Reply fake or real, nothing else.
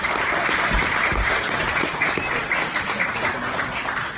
fake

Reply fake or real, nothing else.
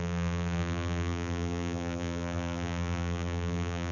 fake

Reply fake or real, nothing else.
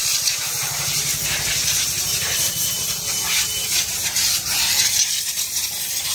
fake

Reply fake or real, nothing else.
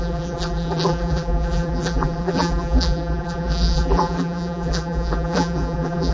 fake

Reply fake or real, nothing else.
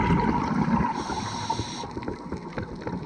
real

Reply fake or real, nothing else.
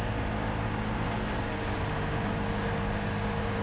real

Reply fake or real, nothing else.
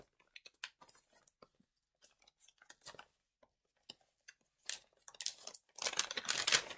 real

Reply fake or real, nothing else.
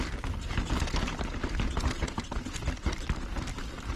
real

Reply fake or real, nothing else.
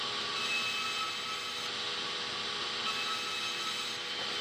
real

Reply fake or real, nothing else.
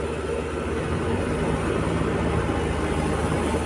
real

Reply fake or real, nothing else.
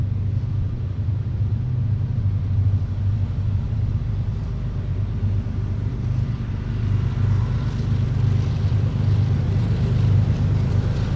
fake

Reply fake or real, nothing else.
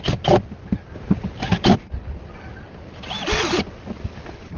real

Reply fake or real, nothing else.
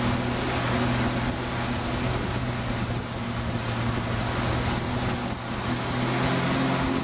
real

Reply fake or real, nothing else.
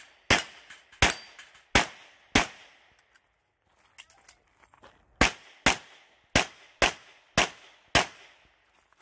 real